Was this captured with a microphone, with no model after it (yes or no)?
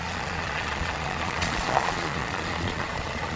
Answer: no